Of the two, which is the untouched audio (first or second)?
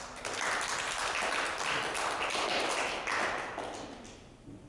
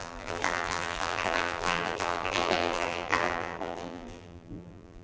first